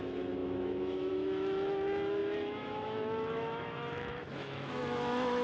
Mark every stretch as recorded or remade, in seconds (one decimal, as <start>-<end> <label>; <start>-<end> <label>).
0.0-5.4 remade